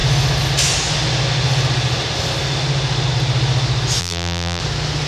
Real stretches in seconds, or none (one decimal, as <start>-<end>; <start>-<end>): 0.0-4.0; 4.6-5.1